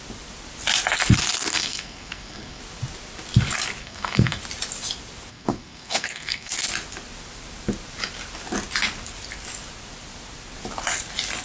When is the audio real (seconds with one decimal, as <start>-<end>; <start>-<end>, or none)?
0.0-1.5; 2.6-3.8; 4.4-5.3; 6.5-11.4